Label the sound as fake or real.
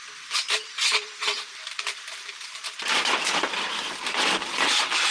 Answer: fake